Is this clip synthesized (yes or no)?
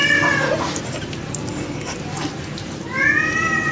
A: no